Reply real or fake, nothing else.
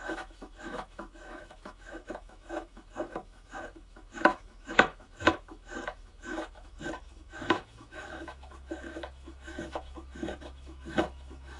fake